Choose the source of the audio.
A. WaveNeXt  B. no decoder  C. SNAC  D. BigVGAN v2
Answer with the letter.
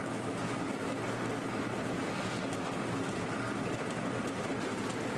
B